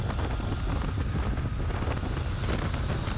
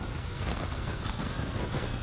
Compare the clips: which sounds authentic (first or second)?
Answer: first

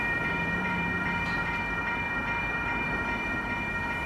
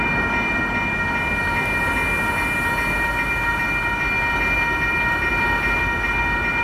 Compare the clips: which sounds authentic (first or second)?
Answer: second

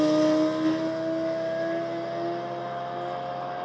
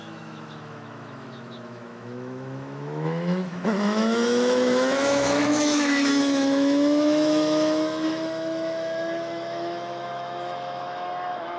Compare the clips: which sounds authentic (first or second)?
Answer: first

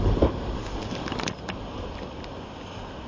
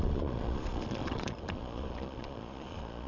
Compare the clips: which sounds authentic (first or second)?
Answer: first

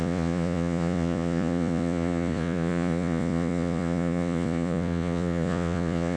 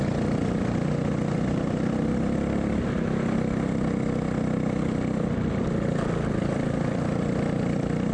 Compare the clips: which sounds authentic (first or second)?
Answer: second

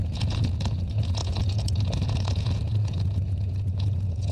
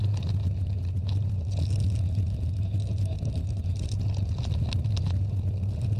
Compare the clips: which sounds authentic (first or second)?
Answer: second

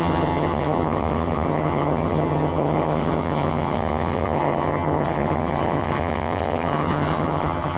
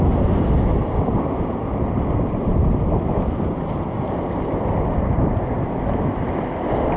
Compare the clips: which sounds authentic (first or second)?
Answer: second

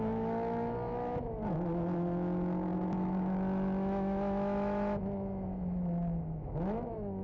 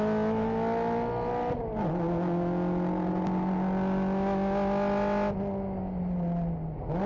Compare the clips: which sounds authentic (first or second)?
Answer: second